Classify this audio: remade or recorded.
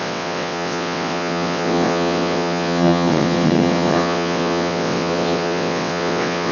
remade